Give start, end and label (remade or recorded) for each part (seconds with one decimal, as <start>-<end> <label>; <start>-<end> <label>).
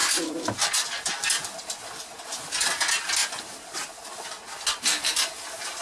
0.0-5.8 recorded